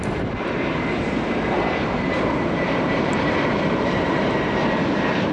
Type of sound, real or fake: fake